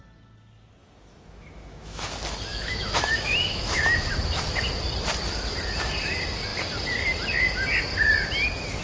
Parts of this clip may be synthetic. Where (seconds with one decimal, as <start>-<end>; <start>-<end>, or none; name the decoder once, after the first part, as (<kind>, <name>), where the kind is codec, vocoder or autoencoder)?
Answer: 0.8-2.1 (autoencoder, DAC-VAE); 2.5-4.4